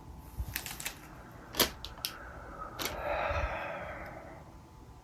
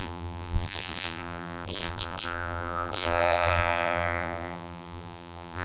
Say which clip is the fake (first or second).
second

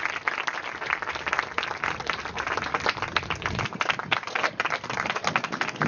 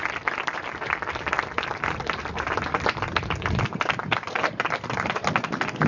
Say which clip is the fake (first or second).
second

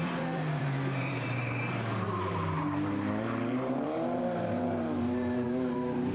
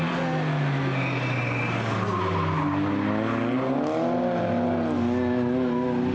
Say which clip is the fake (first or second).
first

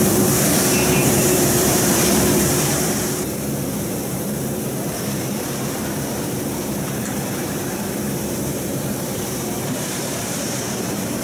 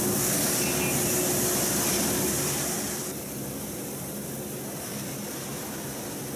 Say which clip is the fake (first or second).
first